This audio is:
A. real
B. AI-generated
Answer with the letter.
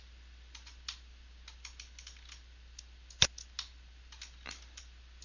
A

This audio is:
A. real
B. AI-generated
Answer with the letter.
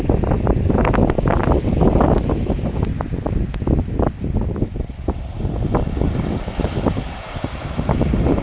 A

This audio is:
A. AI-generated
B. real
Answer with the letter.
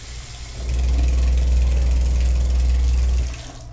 B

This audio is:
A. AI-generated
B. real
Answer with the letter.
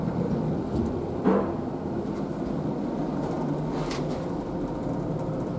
A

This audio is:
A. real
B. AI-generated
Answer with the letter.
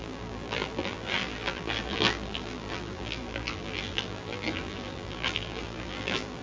B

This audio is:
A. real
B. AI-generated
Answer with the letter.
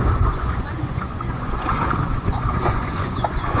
B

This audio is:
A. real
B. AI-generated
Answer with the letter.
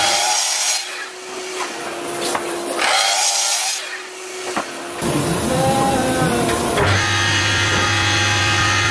A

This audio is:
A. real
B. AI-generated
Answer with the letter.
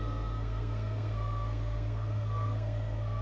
B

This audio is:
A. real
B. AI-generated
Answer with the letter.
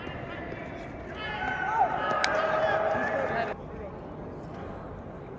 A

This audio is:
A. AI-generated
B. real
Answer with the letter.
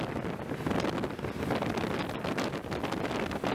B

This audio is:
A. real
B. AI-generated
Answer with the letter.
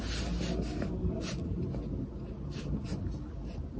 A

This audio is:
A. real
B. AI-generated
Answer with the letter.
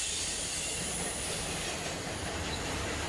A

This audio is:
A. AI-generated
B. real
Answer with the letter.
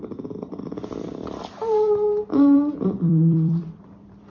A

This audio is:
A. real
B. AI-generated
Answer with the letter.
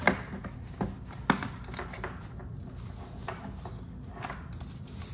A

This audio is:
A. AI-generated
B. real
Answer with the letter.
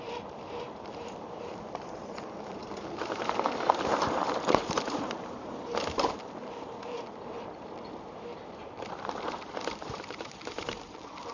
A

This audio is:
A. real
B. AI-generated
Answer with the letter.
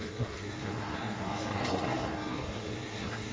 B